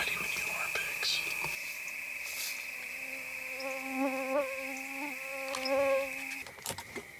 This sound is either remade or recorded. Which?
recorded